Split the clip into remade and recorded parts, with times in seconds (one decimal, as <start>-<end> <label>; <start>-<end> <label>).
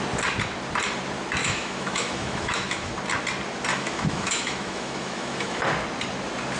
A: 0.0-1.4 recorded; 1.4-2.9 remade; 2.9-3.7 recorded; 3.7-5.6 remade; 5.6-6.6 recorded